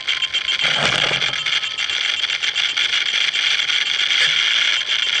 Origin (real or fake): real